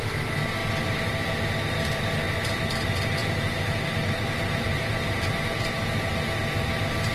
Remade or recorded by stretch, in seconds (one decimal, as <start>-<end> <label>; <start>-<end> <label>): 0.0-3.2 recorded; 3.2-6.1 remade; 6.1-7.1 recorded